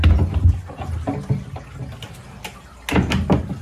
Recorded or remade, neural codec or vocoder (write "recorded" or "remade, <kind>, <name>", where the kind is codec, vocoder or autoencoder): recorded